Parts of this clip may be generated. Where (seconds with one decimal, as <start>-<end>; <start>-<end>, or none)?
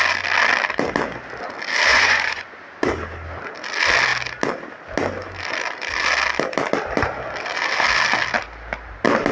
1.9-2.5